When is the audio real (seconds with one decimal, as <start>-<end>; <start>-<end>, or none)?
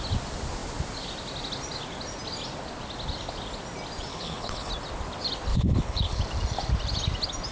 0.0-4.1; 4.7-5.5; 6.2-7.5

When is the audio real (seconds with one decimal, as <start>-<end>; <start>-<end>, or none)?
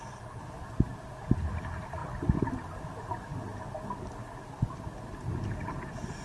0.0-6.2